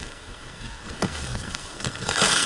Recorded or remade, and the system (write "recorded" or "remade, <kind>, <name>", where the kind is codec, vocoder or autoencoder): remade, codec, SNAC